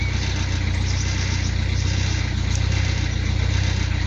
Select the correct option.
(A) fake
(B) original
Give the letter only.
B